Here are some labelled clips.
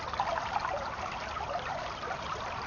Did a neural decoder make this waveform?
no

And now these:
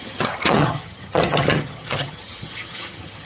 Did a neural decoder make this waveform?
yes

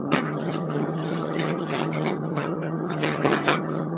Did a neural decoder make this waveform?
yes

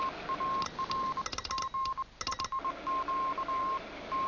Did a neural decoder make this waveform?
no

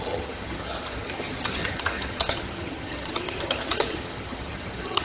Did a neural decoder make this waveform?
yes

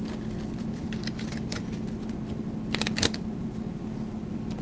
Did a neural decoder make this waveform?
no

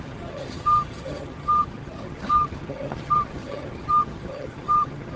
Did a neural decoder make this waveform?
yes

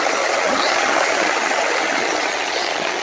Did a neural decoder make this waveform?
yes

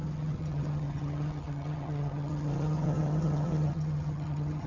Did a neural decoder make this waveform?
yes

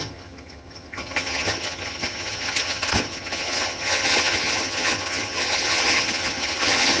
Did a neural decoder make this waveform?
yes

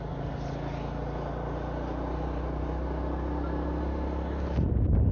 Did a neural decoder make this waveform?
no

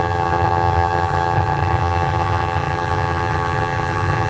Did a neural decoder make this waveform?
yes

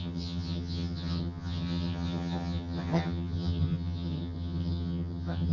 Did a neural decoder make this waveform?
yes